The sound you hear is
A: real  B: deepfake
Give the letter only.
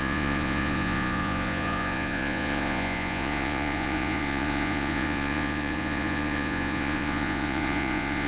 B